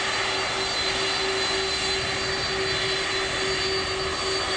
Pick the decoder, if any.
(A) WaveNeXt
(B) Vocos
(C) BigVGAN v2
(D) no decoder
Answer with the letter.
D